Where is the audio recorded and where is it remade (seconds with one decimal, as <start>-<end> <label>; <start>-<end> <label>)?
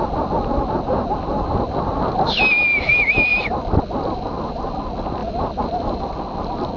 0.0-5.2 recorded; 5.2-6.0 remade; 6.0-6.8 recorded